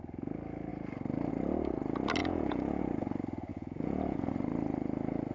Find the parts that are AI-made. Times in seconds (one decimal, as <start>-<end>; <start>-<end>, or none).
2.2-2.8; 3.5-4.3